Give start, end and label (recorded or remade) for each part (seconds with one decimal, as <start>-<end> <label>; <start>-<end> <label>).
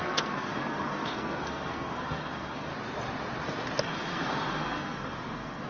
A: 0.0-2.7 remade; 2.7-3.8 recorded; 3.8-5.7 remade